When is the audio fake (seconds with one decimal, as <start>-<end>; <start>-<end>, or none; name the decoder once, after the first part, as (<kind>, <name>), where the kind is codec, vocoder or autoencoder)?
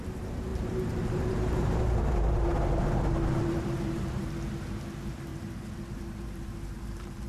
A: 0.5-4.3 (vocoder, BigVGAN v2); 5.3-7.3